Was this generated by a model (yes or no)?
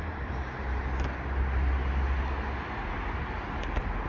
no